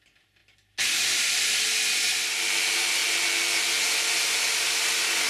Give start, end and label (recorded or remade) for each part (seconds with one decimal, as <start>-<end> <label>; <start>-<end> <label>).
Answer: 0.0-5.3 recorded